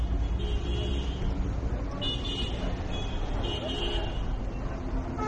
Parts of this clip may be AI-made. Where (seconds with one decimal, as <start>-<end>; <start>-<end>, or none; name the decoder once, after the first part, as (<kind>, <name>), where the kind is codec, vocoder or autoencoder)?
none